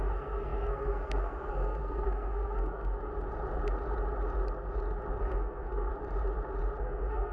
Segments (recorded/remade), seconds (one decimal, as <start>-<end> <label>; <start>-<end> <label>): 0.0-3.1 remade; 3.1-5.2 recorded; 5.2-5.9 remade; 5.9-6.8 recorded; 6.8-7.3 remade